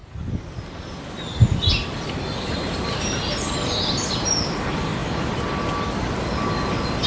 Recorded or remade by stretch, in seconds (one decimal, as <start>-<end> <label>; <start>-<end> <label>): 0.0-7.1 recorded